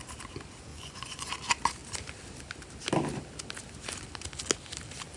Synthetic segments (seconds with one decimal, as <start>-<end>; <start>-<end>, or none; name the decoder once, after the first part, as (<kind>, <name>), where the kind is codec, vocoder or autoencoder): 0.7-1.3 (vocoder, Vocos)